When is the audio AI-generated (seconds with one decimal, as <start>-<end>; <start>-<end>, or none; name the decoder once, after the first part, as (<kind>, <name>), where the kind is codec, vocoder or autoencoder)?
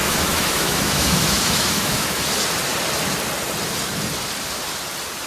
0.0-2.3 (autoencoder, DAC-VAE)